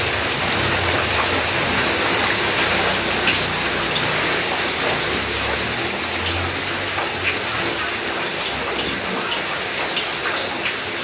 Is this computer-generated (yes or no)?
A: no